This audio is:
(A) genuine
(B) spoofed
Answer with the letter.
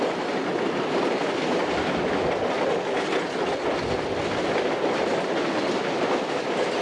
A